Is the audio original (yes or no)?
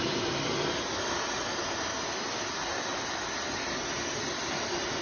yes